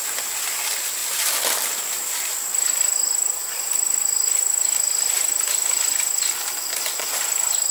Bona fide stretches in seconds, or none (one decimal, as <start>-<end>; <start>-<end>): 0.0-1.0; 2.9-7.7